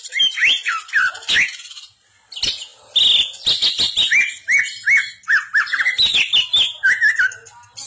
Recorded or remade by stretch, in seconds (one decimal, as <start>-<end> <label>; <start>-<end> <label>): 0.0-7.9 recorded